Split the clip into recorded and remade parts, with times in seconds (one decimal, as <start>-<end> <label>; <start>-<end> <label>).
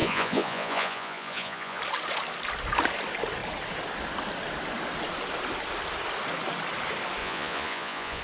0.0-1.8 remade; 1.8-7.2 recorded; 7.2-8.2 remade